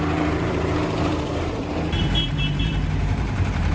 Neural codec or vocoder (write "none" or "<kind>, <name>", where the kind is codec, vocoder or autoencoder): vocoder, BigVGAN v2